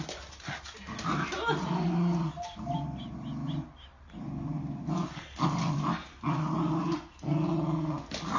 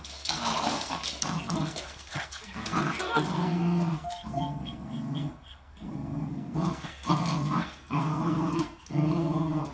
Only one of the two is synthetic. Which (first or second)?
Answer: second